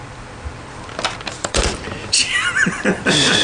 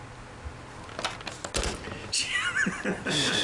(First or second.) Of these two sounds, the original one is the second